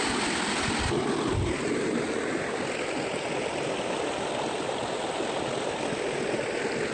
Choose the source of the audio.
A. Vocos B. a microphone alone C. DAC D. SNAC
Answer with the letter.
B